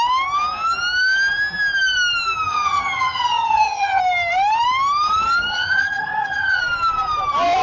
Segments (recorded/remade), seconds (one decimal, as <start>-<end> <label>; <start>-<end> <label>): 0.0-2.5 recorded; 2.5-4.0 remade; 4.0-5.5 recorded; 5.5-6.6 remade; 6.6-7.6 recorded